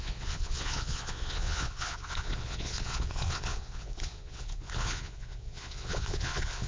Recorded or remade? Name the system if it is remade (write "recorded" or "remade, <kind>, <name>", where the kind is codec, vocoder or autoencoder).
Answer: remade, vocoder, Vocos